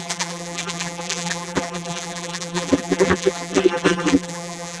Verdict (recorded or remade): remade